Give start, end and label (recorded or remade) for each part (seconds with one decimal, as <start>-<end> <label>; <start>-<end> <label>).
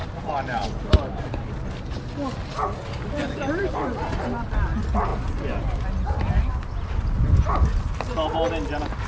0.0-3.2 recorded; 3.2-4.4 remade; 4.4-9.1 recorded